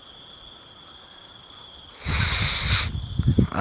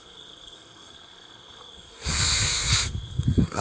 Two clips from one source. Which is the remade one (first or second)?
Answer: second